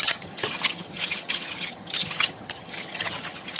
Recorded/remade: remade